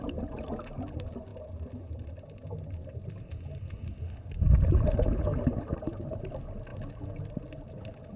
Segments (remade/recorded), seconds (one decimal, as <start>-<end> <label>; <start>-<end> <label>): 0.0-8.2 recorded